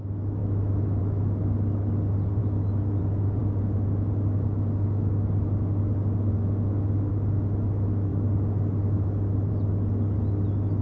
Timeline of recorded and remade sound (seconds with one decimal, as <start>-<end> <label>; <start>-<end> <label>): 0.0-2.4 recorded; 2.4-3.0 remade; 3.0-10.8 recorded